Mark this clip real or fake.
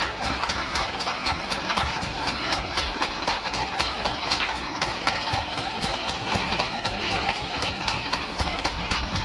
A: fake